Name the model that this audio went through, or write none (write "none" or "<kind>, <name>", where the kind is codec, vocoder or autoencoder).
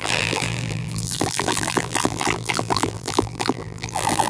vocoder, BigVGAN v2